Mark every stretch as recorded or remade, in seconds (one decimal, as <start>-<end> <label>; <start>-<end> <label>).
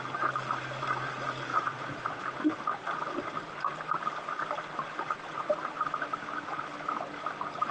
0.0-1.5 recorded; 1.5-2.2 remade; 2.2-7.7 recorded